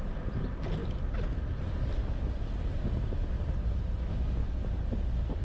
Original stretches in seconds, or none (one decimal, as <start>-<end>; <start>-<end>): 0.0-4.4; 4.9-5.4